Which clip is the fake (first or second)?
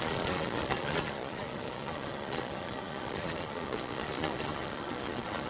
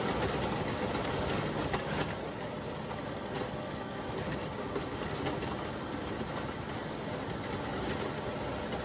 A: first